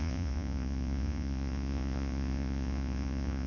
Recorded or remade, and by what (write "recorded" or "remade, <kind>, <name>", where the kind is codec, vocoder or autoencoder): remade, vocoder, Vocos